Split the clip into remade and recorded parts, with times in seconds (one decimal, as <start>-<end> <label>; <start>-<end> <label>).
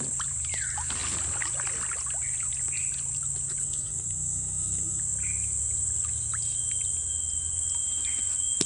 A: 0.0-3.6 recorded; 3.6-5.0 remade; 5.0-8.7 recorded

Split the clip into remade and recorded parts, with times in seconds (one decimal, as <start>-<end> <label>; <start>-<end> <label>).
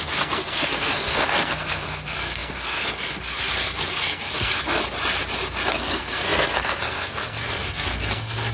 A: 0.0-4.8 remade; 4.8-5.7 recorded; 5.7-8.5 remade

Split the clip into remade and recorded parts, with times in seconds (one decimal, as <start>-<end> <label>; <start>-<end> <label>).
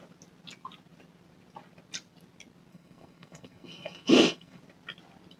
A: 0.0-2.7 recorded; 2.7-4.6 remade; 4.6-5.4 recorded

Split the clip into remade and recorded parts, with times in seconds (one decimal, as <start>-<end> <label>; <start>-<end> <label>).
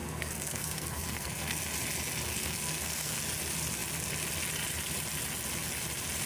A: 0.0-1.6 remade; 1.6-2.3 recorded; 2.3-3.2 remade; 3.2-6.3 recorded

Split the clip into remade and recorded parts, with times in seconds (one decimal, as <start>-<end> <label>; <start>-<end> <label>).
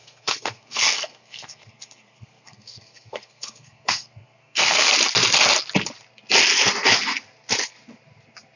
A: 0.0-4.9 remade; 4.9-8.6 recorded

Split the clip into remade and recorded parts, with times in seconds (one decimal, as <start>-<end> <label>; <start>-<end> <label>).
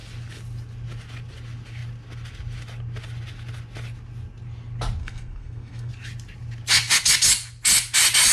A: 0.0-5.0 recorded; 5.0-5.9 remade; 5.9-8.3 recorded